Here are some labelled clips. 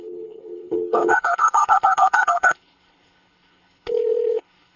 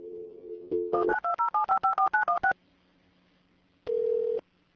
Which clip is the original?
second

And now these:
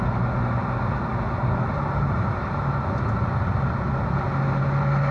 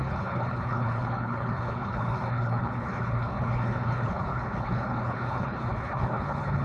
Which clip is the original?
first